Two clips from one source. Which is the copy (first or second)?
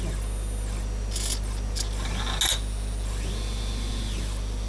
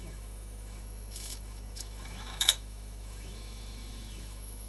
second